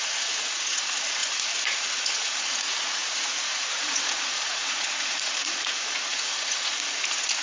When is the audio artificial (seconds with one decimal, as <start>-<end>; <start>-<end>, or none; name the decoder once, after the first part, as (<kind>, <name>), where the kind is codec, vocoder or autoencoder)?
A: 0.0-7.4 (vocoder, Vocos)